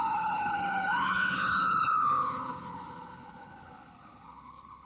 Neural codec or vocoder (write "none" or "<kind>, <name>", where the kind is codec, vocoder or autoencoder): codec, HILCodec